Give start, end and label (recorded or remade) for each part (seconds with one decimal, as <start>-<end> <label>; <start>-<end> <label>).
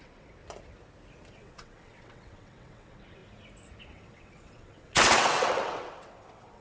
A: 0.0-0.4 remade; 0.4-1.3 recorded; 1.3-3.2 remade; 3.2-3.8 recorded; 3.8-6.6 remade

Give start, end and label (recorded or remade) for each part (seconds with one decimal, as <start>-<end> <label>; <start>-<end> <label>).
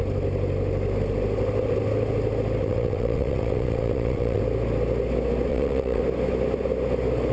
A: 0.0-2.6 recorded; 2.6-4.4 remade; 4.4-5.5 recorded; 5.5-6.0 remade; 6.0-7.3 recorded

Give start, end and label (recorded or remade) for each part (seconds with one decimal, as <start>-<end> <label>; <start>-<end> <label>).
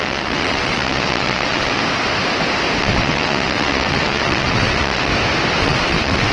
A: 0.0-1.8 remade; 1.8-2.8 recorded; 2.8-5.1 remade; 5.1-5.6 recorded; 5.6-6.3 remade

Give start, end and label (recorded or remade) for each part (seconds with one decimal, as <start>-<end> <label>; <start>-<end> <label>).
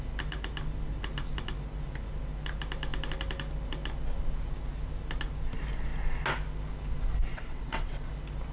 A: 0.0-7.3 recorded; 7.3-8.1 remade; 8.1-8.5 recorded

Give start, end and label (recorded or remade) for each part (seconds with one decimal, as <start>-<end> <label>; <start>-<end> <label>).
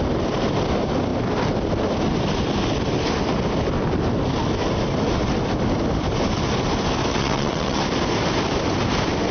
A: 0.0-7.1 recorded; 7.1-7.8 remade; 7.8-9.3 recorded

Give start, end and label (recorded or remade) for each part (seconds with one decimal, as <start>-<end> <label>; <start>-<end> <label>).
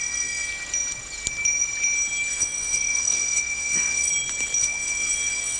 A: 0.0-0.5 remade; 0.5-2.3 recorded; 2.3-4.1 remade; 4.1-4.6 recorded; 4.6-5.6 remade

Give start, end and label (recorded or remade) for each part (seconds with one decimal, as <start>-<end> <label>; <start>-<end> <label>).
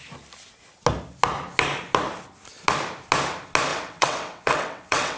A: 0.0-3.7 recorded; 3.7-5.2 remade